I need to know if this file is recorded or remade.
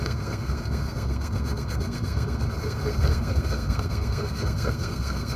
remade